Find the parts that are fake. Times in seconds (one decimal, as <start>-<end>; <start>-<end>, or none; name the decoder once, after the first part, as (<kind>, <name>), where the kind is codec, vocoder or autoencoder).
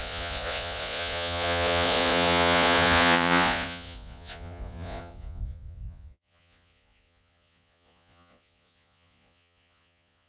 0.0-10.3 (vocoder, Vocos)